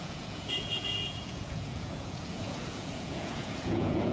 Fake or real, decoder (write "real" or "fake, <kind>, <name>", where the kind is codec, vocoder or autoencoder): fake, vocoder, Vocos